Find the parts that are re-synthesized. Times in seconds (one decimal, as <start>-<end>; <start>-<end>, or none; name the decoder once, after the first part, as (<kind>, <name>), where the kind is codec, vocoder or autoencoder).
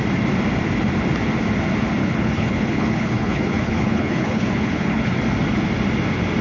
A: 2.0-5.1 (codec, HILCodec)